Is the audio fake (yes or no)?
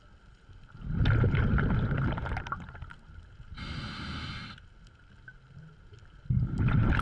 no